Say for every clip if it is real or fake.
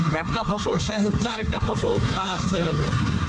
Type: fake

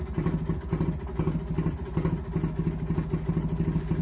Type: real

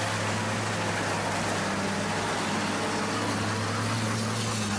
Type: real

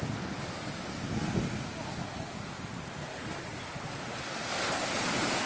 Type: real